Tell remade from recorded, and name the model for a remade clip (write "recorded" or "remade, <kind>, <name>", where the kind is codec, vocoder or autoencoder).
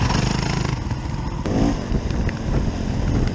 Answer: recorded